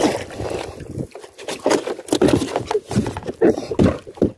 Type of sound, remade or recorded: recorded